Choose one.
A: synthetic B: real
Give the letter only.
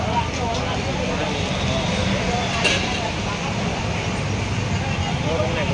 B